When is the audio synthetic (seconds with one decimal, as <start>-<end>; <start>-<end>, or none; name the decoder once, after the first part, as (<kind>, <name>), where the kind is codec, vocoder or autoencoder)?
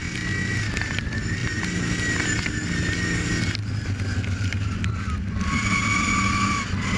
none